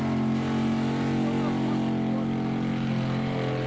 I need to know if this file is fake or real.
real